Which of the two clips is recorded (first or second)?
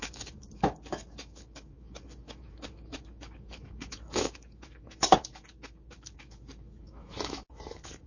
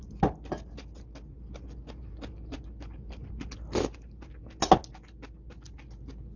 second